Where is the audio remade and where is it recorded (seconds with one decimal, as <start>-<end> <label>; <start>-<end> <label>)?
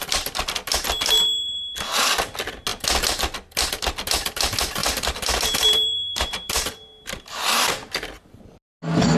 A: 0.0-4.8 recorded; 4.8-7.7 remade; 7.7-9.2 recorded